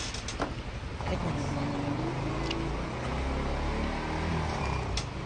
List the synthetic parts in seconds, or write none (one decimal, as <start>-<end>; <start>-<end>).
none